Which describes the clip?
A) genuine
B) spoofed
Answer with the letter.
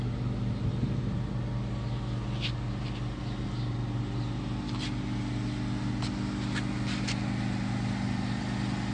A